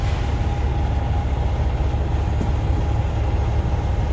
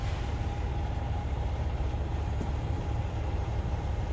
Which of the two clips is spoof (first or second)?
second